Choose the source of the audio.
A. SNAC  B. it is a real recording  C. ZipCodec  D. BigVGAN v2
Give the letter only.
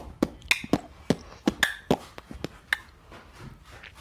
B